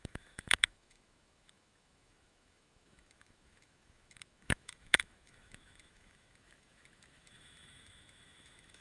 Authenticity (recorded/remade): remade